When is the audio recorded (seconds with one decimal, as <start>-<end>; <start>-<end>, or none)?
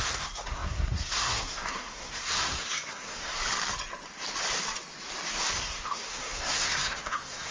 3.4-5.6